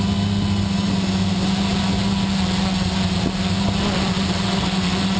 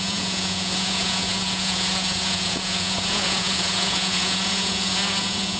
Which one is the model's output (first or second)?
second